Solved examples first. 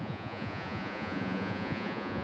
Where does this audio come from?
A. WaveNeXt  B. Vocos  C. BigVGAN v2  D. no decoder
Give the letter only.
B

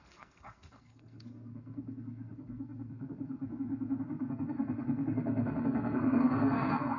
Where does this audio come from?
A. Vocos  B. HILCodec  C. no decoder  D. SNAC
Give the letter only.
D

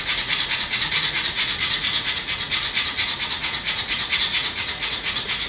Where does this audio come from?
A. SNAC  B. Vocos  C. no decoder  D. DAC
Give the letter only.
B